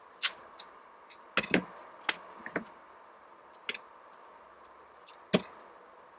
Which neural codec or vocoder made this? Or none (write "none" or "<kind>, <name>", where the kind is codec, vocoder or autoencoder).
none